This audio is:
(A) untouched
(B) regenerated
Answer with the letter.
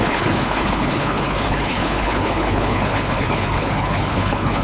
B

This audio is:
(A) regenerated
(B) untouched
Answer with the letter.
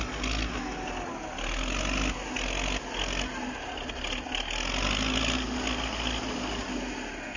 B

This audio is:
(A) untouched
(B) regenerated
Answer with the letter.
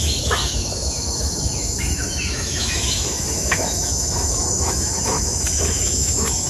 B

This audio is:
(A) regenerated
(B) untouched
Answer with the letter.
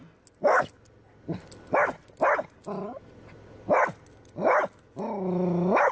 B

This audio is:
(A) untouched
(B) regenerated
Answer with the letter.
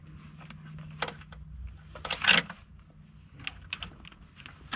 A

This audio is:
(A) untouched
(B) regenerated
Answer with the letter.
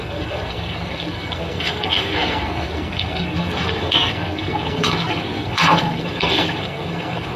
B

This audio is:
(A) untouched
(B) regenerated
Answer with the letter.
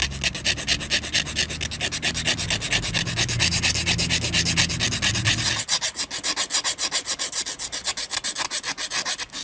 A